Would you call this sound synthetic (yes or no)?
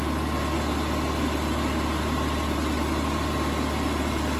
no